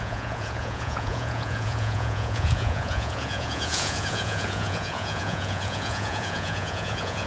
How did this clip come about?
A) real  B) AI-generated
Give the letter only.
B